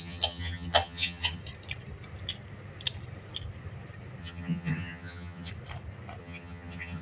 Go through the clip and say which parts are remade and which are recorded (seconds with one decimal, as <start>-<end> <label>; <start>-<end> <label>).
0.0-1.4 remade; 1.4-4.2 recorded; 4.2-5.5 remade; 5.5-6.2 recorded; 6.2-7.0 remade